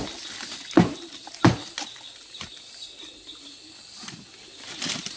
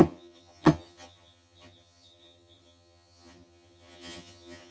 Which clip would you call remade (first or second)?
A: second